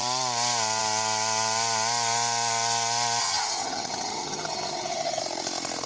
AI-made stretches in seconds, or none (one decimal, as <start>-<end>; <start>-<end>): 3.2-5.2